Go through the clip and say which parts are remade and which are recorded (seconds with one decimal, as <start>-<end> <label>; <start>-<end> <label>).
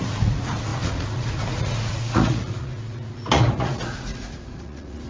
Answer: 0.0-5.1 remade